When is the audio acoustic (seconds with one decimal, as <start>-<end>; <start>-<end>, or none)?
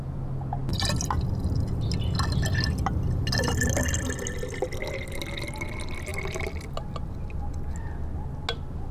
0.0-8.9